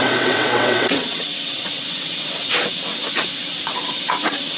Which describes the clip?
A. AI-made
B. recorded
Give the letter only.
A